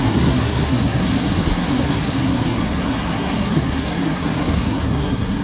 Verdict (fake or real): fake